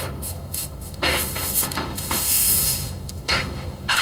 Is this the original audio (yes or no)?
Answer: no